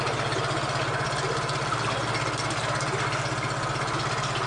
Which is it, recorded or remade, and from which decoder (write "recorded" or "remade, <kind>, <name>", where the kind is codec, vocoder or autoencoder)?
recorded